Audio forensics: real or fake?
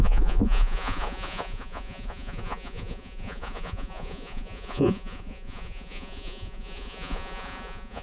fake